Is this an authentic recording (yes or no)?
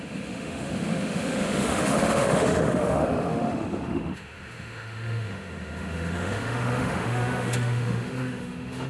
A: no